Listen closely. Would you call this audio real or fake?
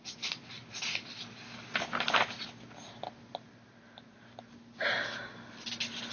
real